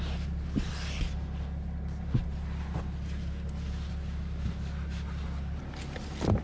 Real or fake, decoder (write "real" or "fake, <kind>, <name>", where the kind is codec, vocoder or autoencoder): real